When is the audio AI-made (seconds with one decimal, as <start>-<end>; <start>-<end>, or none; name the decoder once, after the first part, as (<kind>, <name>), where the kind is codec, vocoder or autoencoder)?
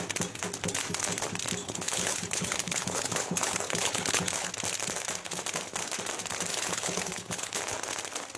1.6-4.5 (codec, HILCodec); 6.5-7.6